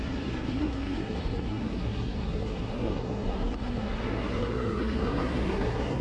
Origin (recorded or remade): remade